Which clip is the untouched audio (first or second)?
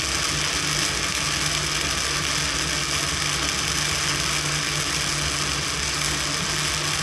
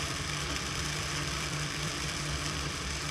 first